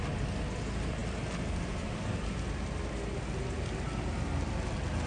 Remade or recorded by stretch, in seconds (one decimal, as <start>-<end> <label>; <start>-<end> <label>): 0.0-5.1 recorded